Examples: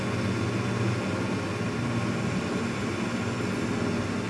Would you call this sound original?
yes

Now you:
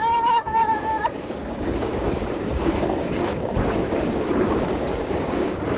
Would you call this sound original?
no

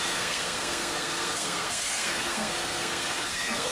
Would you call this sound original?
no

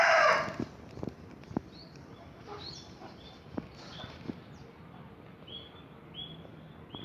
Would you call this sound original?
yes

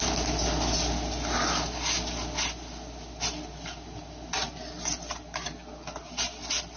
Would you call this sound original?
yes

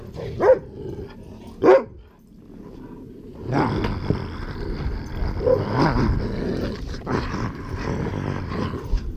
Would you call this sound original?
yes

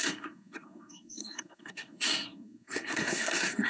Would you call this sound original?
no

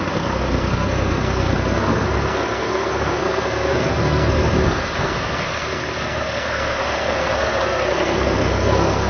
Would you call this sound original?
no